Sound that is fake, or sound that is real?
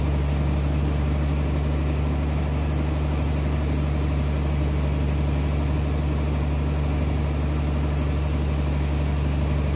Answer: real